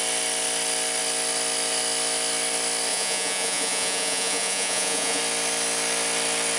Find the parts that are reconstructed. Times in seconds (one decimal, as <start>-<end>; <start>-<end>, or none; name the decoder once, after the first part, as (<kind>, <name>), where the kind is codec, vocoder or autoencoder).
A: 2.9-5.2 (vocoder, Vocos)